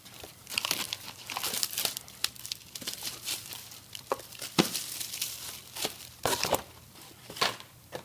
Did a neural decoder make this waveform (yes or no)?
yes